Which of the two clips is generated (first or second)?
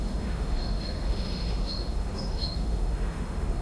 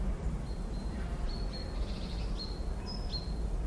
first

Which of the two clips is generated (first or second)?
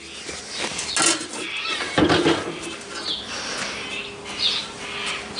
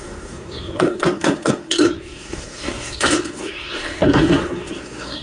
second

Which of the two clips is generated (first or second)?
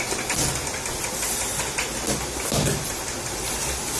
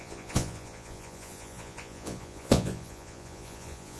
second